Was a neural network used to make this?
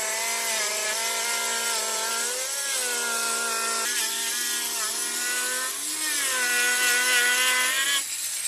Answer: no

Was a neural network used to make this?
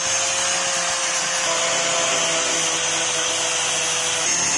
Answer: no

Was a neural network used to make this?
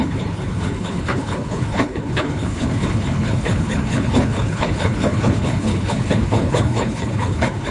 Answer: yes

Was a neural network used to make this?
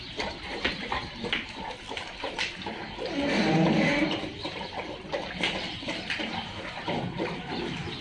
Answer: no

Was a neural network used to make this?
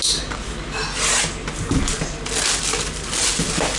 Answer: no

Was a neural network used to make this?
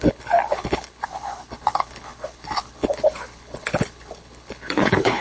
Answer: yes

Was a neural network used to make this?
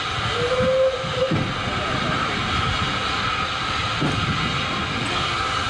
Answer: no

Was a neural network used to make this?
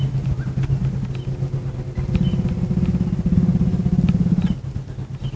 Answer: no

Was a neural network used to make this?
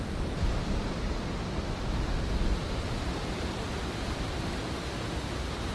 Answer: no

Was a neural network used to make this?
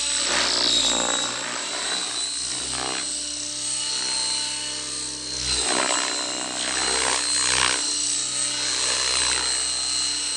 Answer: no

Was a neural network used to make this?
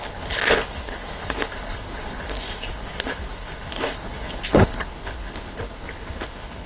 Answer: yes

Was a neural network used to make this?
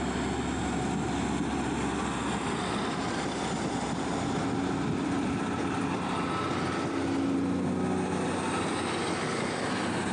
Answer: no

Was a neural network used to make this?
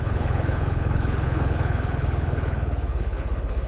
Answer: yes